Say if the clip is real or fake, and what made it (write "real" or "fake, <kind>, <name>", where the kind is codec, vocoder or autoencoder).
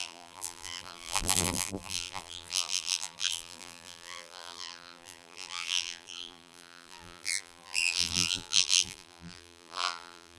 fake, vocoder, BigVGAN v2